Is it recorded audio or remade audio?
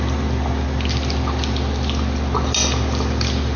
recorded